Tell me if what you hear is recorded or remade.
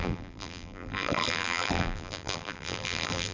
remade